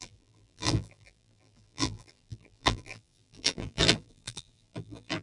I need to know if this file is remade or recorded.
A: remade